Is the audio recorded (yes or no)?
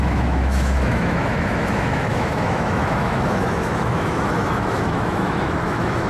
no